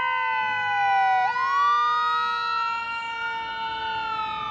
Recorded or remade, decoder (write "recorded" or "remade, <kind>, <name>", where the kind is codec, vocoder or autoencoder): recorded